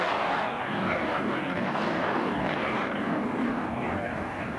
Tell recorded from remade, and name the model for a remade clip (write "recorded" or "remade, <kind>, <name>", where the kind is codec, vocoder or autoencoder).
remade, codec, DAC